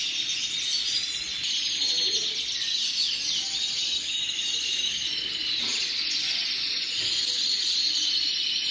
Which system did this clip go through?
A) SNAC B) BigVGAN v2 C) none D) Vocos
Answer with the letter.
C